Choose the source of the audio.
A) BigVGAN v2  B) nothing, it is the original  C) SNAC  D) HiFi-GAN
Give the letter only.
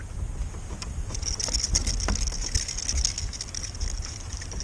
B